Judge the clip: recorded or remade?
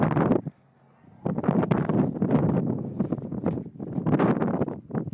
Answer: recorded